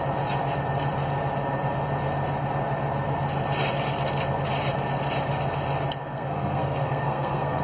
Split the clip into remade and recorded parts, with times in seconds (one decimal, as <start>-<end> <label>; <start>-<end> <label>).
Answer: 0.0-6.0 recorded; 6.0-7.6 remade